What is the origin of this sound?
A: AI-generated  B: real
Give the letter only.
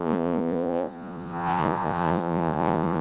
A